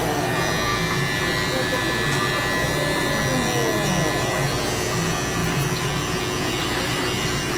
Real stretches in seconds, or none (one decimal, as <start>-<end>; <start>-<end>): 0.0-7.6